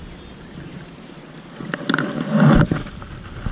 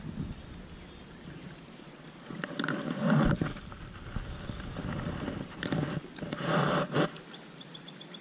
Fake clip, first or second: second